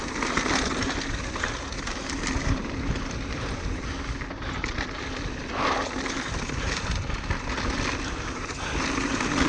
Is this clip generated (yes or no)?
no